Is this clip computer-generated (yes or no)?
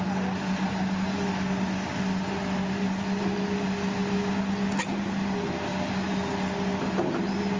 no